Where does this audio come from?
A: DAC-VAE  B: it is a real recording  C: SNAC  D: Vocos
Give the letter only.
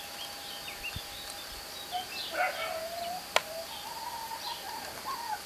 B